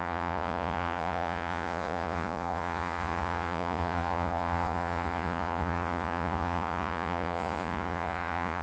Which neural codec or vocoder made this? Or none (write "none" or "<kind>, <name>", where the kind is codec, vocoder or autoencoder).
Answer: vocoder, Vocos